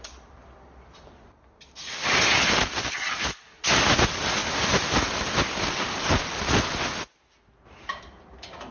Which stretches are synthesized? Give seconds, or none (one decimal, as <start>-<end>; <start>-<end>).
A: none